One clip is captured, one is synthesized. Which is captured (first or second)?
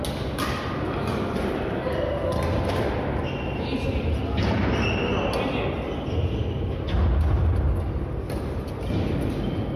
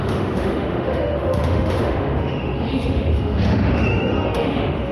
first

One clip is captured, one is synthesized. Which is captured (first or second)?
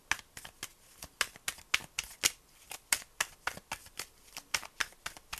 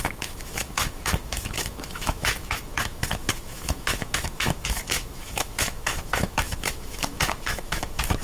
first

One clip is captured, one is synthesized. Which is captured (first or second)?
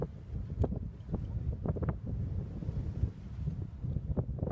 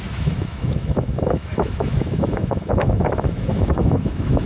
first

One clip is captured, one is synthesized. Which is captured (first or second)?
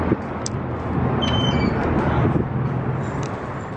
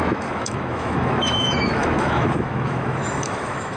first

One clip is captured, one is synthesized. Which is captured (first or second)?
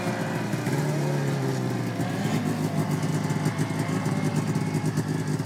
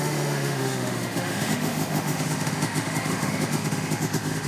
first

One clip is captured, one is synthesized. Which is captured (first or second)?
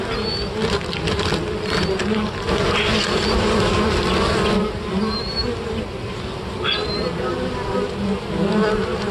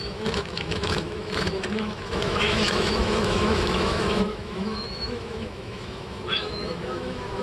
first